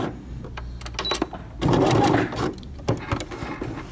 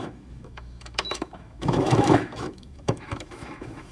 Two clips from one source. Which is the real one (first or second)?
first